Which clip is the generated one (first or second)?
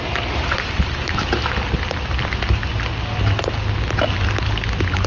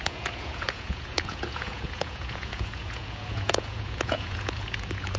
second